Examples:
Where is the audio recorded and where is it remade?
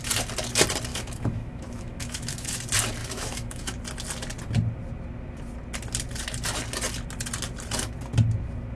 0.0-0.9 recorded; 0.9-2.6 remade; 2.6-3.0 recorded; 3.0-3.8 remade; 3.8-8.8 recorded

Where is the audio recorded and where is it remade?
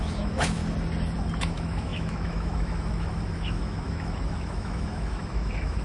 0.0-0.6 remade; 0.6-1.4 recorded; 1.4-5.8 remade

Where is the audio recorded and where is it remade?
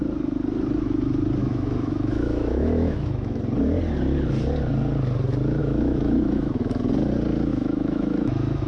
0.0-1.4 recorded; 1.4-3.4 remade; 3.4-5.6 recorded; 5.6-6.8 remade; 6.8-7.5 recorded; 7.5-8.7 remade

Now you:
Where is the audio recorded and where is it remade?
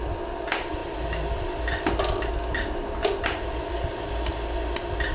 0.0-5.1 recorded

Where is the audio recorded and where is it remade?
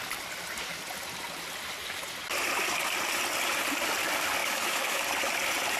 0.0-4.4 recorded; 4.4-5.0 remade; 5.0-5.8 recorded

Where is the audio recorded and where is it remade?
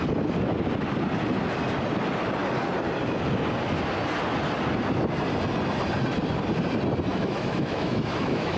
0.0-7.1 recorded; 7.1-8.6 remade